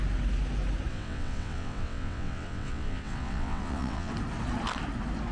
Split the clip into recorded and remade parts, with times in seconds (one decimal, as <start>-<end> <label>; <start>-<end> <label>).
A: 0.0-0.9 recorded; 0.9-4.1 remade; 4.1-5.3 recorded